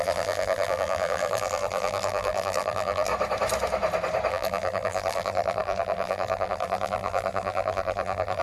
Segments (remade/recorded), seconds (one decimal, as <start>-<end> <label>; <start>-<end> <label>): 0.0-3.1 remade; 3.1-4.3 recorded; 4.3-8.4 remade